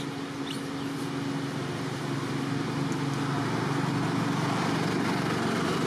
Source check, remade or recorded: recorded